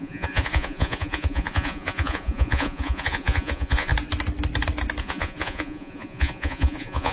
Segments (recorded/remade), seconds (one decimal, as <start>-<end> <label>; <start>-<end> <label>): 0.0-3.9 remade; 3.9-5.0 recorded; 5.0-7.1 remade